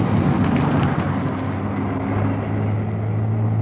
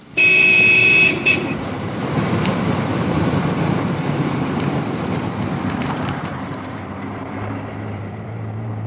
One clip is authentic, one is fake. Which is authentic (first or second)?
first